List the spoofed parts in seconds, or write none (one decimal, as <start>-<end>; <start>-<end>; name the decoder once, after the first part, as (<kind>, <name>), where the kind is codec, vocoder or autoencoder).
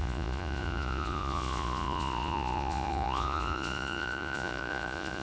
0.0-5.2 (vocoder, Vocos)